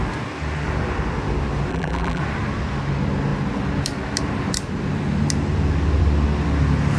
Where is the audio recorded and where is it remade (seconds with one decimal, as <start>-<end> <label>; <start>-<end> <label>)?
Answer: 0.0-1.7 recorded; 1.7-2.2 remade; 2.2-7.0 recorded